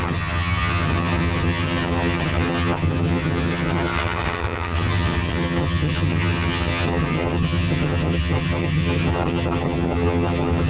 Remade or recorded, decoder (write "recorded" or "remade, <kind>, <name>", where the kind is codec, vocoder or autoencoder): remade, vocoder, HiFi-GAN